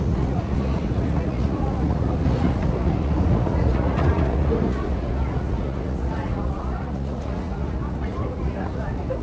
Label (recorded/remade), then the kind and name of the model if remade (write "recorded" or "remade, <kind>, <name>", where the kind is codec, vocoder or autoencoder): remade, vocoder, Vocos